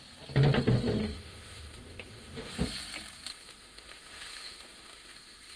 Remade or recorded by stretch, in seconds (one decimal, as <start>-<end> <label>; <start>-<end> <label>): 0.0-1.0 recorded; 1.0-2.5 remade; 2.5-3.3 recorded; 3.3-5.6 remade